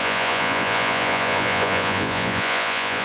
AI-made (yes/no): yes